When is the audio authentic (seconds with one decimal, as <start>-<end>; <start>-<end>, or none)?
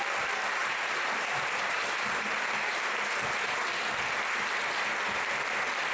0.0-0.6; 3.1-5.9